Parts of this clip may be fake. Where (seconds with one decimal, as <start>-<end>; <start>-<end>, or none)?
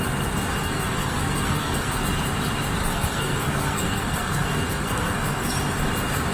0.6-2.0; 2.8-5.5